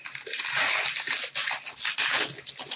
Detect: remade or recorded recorded